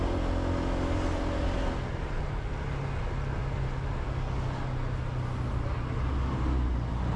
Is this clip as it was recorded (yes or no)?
yes